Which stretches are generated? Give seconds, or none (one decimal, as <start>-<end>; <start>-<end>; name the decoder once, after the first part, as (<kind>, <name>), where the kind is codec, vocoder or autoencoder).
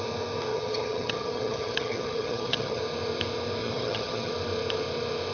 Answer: 0.5-2.8 (vocoder, HiFi-GAN); 3.6-4.3